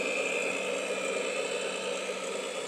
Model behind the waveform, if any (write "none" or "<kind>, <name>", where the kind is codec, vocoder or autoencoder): none